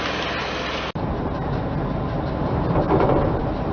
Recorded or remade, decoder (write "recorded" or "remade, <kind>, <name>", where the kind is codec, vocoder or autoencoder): recorded